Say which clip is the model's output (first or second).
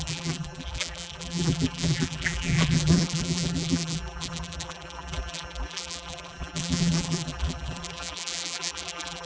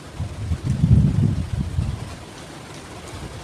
first